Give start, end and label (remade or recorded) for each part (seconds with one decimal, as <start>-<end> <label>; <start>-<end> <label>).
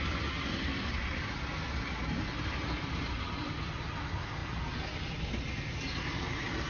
0.0-6.7 recorded